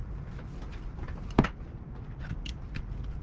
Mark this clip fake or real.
real